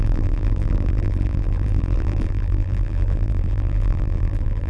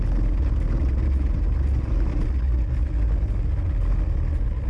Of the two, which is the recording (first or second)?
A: second